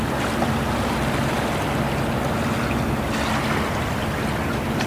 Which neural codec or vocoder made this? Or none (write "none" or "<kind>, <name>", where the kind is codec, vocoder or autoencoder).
none